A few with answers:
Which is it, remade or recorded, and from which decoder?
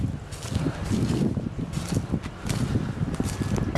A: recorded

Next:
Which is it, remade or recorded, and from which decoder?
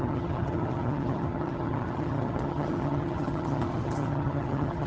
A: remade, vocoder, HiFi-GAN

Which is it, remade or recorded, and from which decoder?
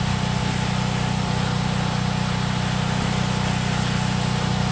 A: recorded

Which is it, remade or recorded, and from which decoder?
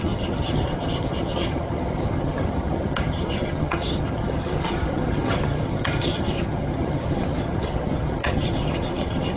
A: remade, vocoder, HiFi-GAN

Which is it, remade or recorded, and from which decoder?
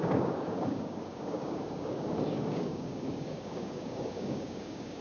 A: remade, codec, DAC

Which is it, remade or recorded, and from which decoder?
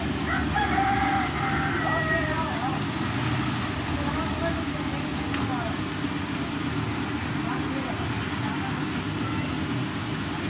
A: recorded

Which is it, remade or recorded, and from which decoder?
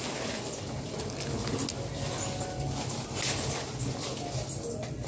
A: recorded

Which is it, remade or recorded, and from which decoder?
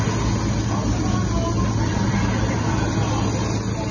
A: recorded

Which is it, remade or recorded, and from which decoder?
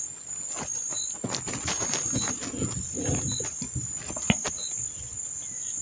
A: recorded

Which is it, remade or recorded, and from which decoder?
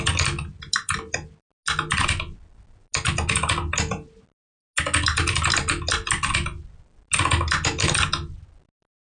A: recorded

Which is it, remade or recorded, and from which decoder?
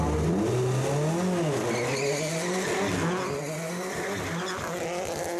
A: recorded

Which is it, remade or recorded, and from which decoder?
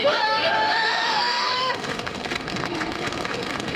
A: remade, autoencoder, DAC-VAE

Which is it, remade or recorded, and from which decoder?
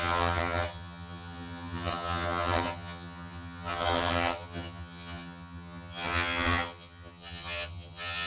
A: remade, vocoder, HiFi-GAN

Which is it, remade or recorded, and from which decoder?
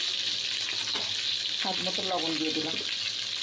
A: recorded